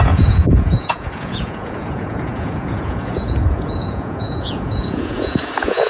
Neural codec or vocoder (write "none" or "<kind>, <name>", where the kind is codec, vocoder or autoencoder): vocoder, Vocos